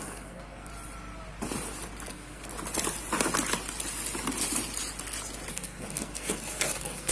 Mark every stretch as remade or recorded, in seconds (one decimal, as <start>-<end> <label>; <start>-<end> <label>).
0.0-0.7 remade; 0.7-2.1 recorded; 2.1-2.5 remade; 2.5-5.5 recorded; 5.5-7.1 remade